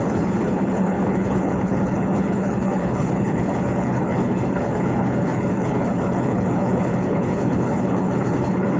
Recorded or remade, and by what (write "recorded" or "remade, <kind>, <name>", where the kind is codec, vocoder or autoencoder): remade, codec, HILCodec